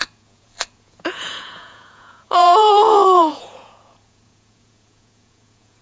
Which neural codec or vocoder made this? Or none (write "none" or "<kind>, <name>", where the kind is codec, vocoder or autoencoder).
vocoder, Vocos